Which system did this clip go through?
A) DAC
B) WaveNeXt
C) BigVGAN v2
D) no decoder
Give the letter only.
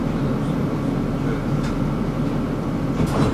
D